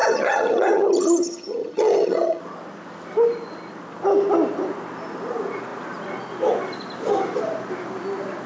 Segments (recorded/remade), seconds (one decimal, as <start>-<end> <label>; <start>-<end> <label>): 0.0-2.4 remade; 2.4-8.5 recorded